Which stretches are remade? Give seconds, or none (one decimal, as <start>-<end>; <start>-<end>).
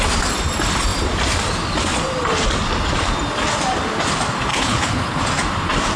4.5-5.2